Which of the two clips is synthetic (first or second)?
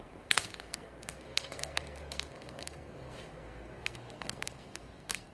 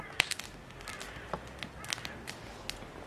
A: first